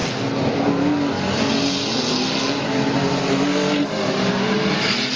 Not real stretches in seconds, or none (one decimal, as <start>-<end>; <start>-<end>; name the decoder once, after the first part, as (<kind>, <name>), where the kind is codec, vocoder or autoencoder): none